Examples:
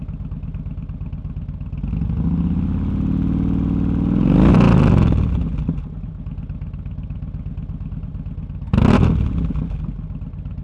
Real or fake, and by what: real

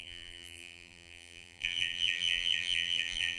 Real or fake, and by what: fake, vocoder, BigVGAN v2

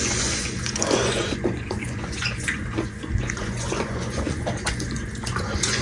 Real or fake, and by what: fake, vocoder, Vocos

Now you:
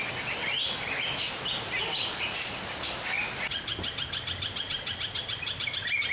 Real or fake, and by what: real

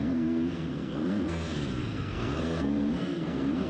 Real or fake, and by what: fake, codec, SNAC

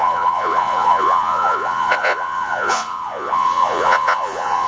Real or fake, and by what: fake, vocoder, Vocos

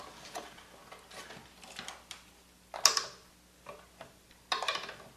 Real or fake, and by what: real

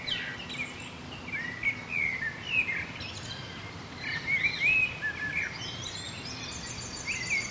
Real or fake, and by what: real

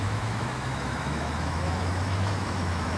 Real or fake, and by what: fake, autoencoder, DAC-VAE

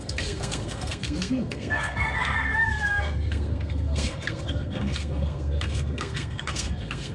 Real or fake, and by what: fake, codec, SNAC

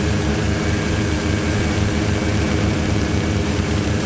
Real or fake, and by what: fake, vocoder, BigVGAN v2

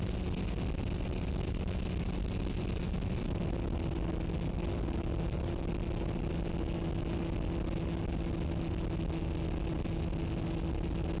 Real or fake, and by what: real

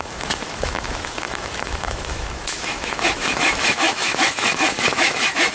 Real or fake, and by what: fake, autoencoder, DAC-VAE